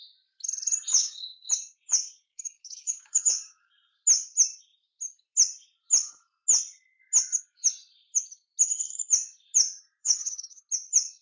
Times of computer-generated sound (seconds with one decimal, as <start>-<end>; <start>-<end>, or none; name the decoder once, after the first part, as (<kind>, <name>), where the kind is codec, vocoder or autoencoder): 0.9-1.5 (codec, DAC); 1.9-3.9; 10.0-10.6